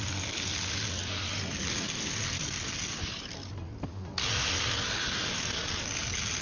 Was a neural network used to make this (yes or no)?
no